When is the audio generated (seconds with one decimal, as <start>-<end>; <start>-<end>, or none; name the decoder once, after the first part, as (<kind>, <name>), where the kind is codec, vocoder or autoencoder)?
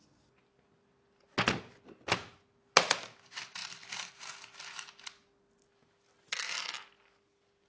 none